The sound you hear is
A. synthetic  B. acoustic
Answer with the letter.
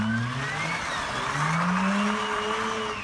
B